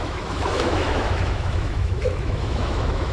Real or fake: fake